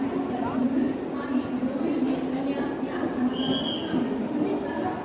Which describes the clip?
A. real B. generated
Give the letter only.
A